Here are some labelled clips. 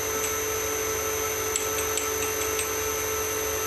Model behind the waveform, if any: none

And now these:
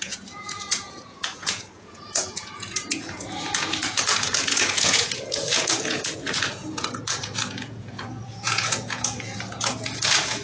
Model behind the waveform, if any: vocoder, Vocos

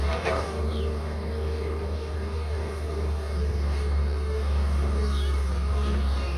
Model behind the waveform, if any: codec, DAC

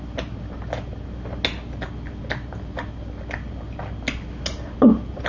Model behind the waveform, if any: none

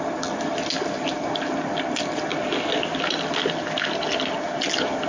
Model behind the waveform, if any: none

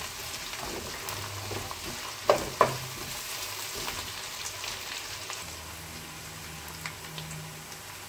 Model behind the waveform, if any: none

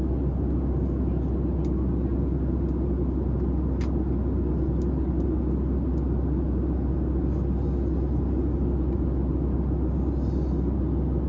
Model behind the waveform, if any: none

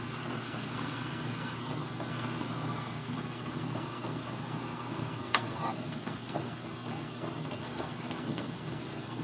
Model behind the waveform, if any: codec, SNAC